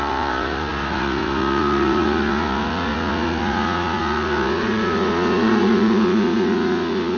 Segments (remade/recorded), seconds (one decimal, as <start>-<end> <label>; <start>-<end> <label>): 0.0-7.2 remade